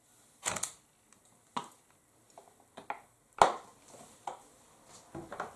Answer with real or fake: real